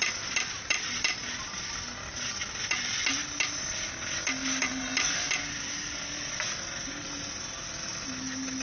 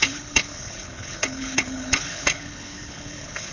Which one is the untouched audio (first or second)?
first